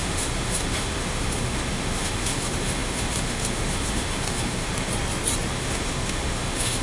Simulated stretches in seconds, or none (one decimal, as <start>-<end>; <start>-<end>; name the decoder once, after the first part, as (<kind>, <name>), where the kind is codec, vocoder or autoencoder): 0.0-4.9 (autoencoder, DAC-VAE); 5.5-6.8